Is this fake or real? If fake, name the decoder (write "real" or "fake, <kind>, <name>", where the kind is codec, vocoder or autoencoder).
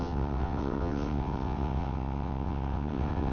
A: fake, vocoder, WaveNeXt